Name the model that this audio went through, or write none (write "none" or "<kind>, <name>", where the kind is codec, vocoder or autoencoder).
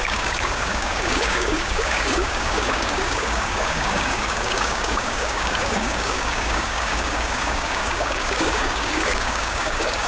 codec, DAC